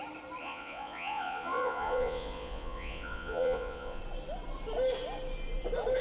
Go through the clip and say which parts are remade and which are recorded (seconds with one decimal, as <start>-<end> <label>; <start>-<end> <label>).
0.0-0.4 recorded; 0.4-4.0 remade; 4.0-6.0 recorded